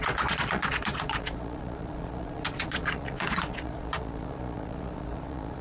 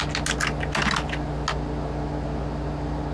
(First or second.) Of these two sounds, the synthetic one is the first